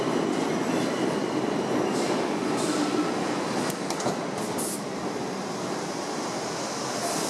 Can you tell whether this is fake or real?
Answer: real